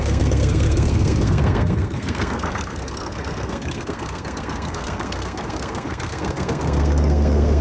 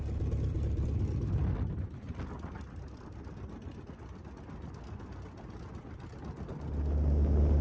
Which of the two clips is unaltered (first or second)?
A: second